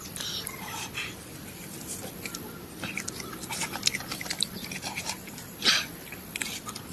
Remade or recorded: recorded